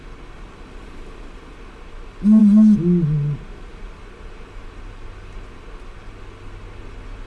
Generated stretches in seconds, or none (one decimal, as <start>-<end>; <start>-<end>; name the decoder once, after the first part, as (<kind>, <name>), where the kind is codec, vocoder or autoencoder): none